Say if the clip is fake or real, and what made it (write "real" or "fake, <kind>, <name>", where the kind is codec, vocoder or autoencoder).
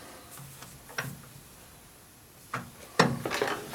real